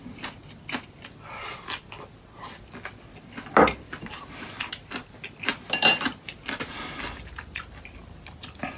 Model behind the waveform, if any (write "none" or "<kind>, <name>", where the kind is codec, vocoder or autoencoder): none